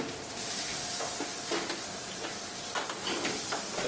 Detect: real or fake real